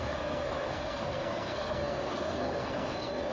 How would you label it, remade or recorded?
remade